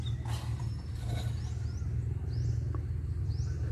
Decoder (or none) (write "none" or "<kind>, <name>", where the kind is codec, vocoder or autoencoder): none